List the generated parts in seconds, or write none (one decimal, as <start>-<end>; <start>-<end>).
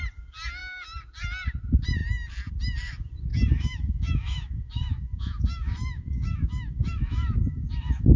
3.3-8.2